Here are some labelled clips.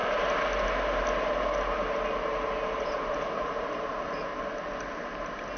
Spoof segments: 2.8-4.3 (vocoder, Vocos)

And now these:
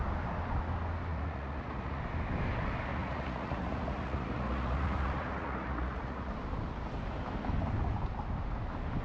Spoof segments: 1.1-2.0 (vocoder, Vocos); 2.9-6.3